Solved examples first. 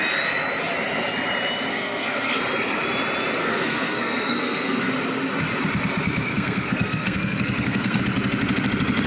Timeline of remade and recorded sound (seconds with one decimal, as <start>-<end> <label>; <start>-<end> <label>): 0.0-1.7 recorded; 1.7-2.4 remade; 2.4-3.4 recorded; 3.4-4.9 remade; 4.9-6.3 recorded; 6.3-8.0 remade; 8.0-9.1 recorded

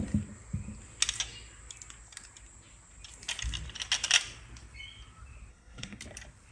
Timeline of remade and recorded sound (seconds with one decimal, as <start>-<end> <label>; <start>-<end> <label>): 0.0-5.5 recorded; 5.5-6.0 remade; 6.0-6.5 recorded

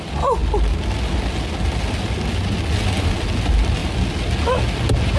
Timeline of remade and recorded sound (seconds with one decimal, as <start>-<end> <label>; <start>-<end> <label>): 0.0-5.2 recorded

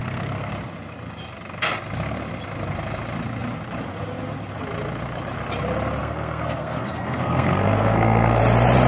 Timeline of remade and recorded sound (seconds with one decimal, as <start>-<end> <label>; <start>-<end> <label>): 0.0-0.5 remade; 0.5-6.0 recorded; 6.0-8.4 remade; 8.4-8.9 recorded

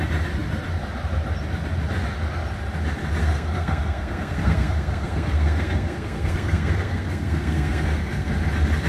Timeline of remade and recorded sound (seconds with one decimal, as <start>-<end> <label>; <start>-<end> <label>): 0.0-3.2 recorded; 3.2-8.3 remade; 8.3-8.9 recorded

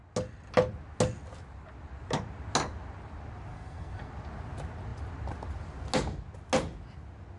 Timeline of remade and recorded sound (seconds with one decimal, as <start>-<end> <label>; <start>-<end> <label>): 0.0-3.5 recorded; 3.5-4.1 remade; 4.1-7.4 recorded

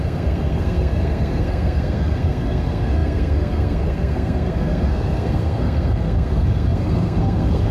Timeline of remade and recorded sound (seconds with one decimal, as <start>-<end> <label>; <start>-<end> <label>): 0.0-7.7 remade